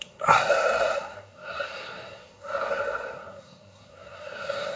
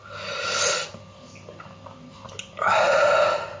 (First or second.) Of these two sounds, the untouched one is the second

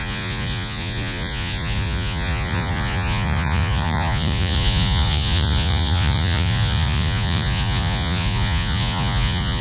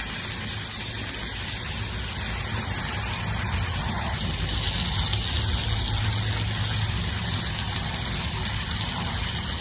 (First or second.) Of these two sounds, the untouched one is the second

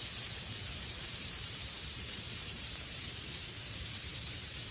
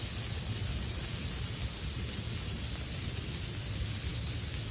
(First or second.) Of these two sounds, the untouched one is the second